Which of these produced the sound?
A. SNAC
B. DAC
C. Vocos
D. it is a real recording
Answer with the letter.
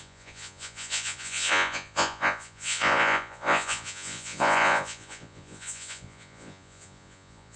C